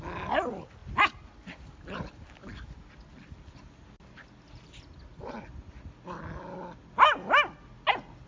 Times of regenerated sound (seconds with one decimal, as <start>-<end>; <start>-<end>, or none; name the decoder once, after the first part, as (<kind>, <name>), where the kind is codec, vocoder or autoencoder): none